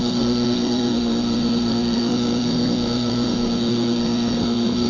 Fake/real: fake